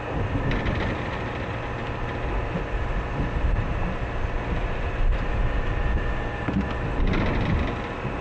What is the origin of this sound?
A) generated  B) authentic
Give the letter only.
B